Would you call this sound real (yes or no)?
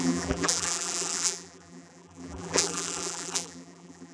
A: no